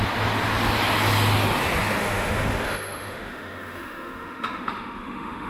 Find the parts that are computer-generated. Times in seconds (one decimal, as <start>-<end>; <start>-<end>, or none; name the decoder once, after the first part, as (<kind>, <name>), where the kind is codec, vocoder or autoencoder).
2.0-5.5 (autoencoder, DAC-VAE)